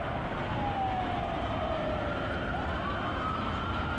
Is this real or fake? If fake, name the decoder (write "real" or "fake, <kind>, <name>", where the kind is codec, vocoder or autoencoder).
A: real